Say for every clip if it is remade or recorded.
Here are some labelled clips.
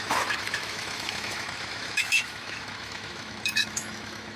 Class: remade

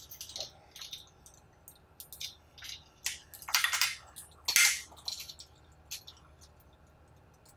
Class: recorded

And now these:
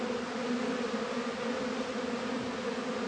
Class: recorded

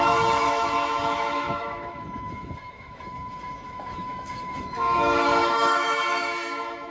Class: remade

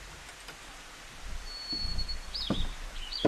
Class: recorded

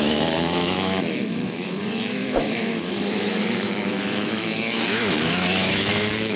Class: remade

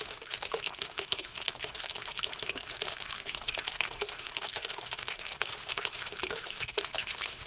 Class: remade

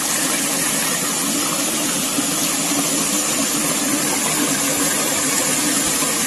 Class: recorded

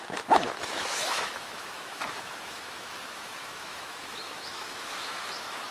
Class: remade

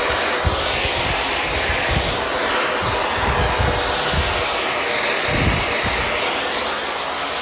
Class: recorded